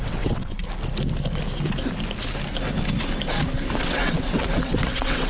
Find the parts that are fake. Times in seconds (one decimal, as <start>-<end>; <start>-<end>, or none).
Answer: 0.0-0.6; 3.8-5.3